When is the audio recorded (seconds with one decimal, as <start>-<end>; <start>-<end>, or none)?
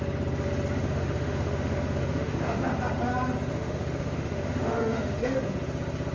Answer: 0.0-0.8; 2.7-3.5; 5.5-6.1